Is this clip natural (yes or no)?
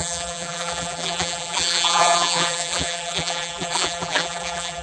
no